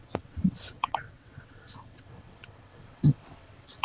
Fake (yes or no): yes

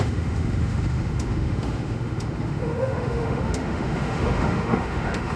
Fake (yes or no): yes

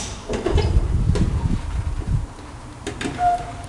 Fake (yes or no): yes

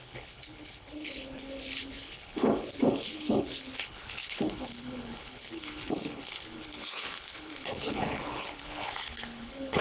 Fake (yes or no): yes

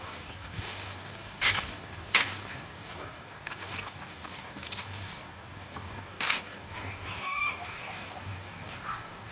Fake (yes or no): yes